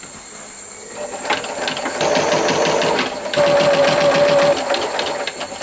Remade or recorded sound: recorded